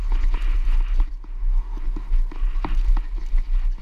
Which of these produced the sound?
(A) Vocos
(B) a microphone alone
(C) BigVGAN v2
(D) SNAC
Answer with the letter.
B